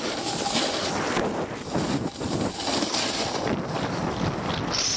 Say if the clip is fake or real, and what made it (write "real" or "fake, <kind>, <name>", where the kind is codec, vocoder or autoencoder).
real